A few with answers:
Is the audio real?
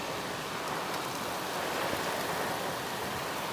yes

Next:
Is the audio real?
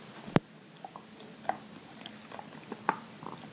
yes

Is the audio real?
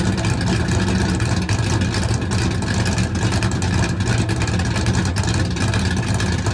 yes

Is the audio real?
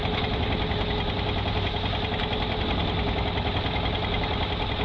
yes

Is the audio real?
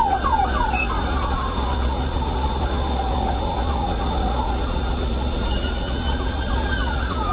no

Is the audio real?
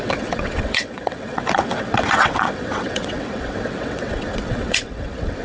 no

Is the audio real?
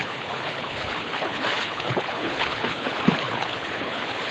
no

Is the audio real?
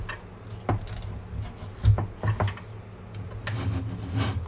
yes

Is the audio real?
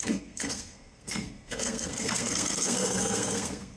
no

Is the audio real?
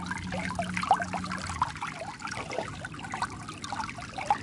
yes